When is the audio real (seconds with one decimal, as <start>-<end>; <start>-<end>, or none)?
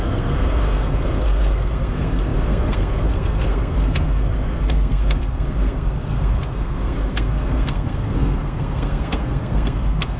none